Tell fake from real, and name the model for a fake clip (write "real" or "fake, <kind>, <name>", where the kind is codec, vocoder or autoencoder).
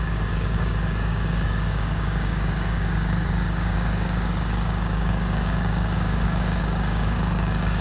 fake, codec, DAC